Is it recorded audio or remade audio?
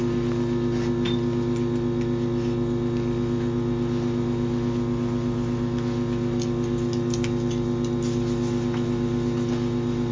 recorded